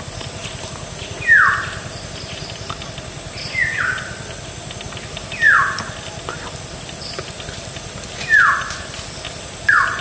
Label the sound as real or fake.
real